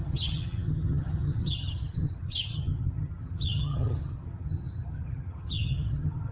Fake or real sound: fake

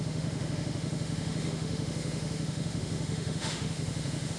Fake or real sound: fake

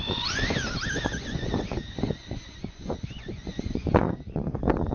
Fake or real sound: fake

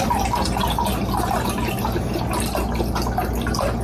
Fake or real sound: real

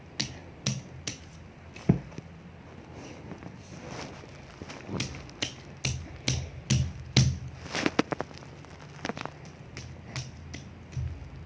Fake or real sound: real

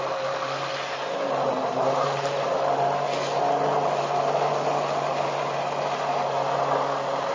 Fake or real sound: real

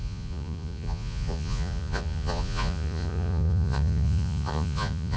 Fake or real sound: fake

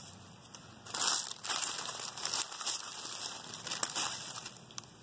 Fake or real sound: fake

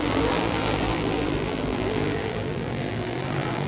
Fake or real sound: fake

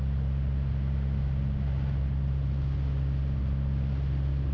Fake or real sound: real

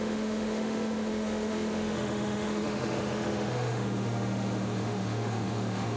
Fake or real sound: fake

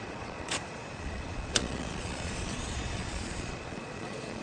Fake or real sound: fake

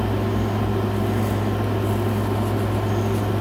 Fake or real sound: real